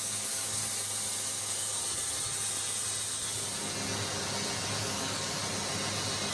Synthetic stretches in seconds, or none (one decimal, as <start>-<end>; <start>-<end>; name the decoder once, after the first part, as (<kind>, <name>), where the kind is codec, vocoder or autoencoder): 0.0-0.6 (codec, DAC); 1.3-1.8; 4.8-5.4